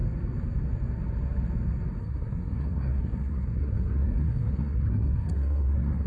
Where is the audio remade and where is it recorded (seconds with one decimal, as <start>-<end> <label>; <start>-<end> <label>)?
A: 0.0-2.0 recorded; 2.0-6.1 remade